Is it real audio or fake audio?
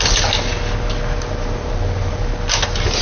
real